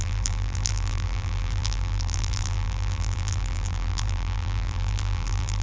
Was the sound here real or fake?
fake